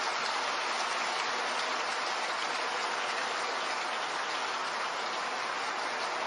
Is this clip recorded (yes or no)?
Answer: yes